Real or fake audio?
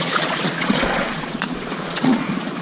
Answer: fake